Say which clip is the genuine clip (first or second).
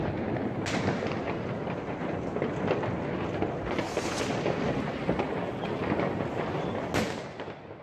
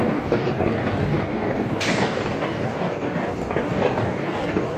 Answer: first